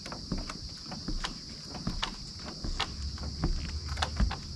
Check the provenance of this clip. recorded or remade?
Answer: recorded